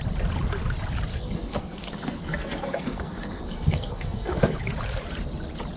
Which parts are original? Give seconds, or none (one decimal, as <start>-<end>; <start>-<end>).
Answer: 0.0-1.1; 4.6-5.8

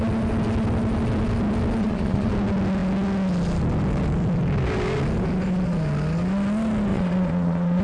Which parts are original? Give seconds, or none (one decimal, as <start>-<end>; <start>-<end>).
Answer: 0.0-1.8; 2.3-6.9

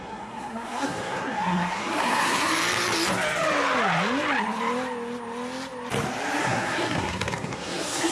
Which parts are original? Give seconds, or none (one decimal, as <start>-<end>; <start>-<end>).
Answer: 2.5-6.4

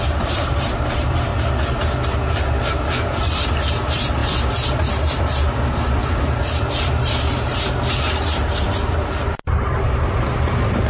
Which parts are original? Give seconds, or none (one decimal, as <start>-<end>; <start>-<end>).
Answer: 1.3-2.2

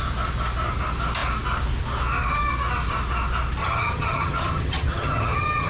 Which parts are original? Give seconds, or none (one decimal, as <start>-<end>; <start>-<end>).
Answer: 0.0-3.6

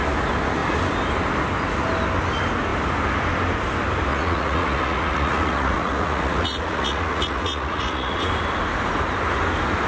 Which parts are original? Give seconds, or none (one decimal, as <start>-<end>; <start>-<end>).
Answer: 0.0-4.1; 8.2-9.9

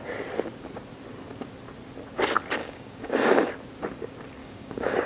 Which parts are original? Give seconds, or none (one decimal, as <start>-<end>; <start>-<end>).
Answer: 0.0-2.6; 3.5-4.4

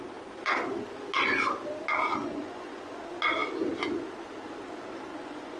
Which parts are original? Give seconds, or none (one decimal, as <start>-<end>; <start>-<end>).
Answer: 0.0-2.2; 3.0-5.1